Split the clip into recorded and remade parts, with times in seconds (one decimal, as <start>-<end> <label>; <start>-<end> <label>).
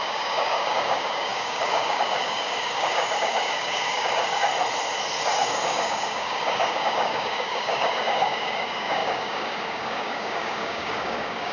0.0-4.5 remade; 4.5-5.2 recorded; 5.2-11.5 remade